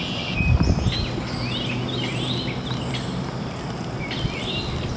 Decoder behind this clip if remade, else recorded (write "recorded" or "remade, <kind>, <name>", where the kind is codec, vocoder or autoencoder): recorded